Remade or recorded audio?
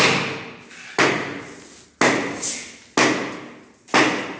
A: recorded